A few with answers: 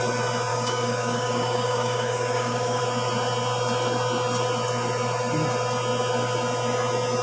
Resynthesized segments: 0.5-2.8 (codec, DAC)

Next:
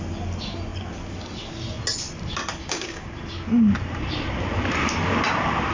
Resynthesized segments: 2.6-3.1 (codec, DAC)

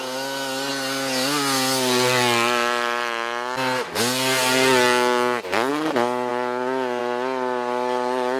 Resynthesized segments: none

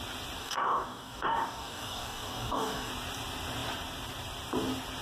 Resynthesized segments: 0.4-2.9 (codec, DAC)

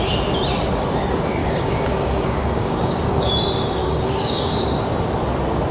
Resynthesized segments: 1.4-3.3 (codec, DAC); 3.8-4.4

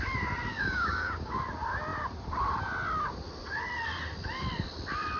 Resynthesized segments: 0.5-1.4 (codec, DAC)